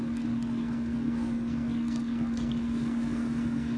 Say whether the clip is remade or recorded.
remade